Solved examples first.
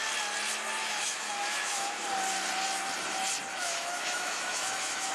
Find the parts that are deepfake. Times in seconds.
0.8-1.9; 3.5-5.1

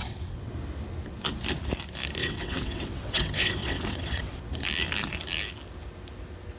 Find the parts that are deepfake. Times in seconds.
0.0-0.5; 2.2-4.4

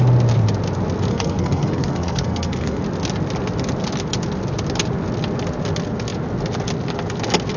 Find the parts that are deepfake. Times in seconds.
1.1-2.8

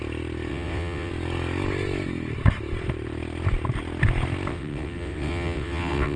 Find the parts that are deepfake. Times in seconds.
0.5-1.1; 4.5-6.2

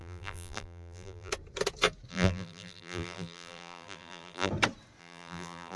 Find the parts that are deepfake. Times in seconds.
0.0-1.3; 2.1-4.5; 5.0-5.8

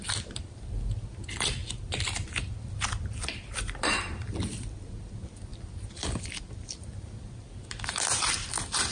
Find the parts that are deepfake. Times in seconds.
0.0-8.9

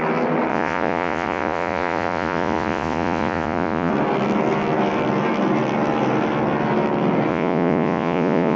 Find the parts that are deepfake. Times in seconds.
0.5-3.9; 7.3-8.6

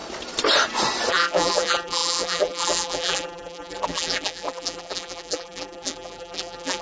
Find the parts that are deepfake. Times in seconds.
1.1-6.8